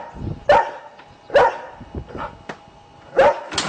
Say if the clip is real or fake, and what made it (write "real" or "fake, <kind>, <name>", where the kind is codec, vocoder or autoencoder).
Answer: real